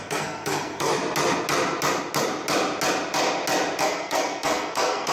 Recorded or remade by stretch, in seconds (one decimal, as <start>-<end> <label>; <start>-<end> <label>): 0.0-0.9 remade; 0.9-3.8 recorded; 3.8-5.1 remade